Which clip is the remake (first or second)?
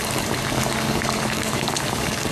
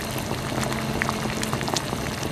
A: first